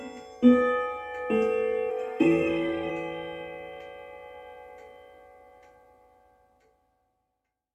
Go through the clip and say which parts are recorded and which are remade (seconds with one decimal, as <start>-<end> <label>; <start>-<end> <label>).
0.0-1.9 recorded; 1.9-2.9 remade; 2.9-7.7 recorded